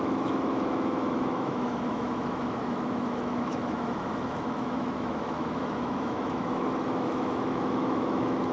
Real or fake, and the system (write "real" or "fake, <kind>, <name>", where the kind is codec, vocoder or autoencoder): fake, autoencoder, DAC-VAE